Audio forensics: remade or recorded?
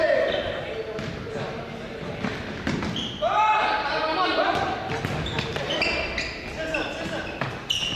recorded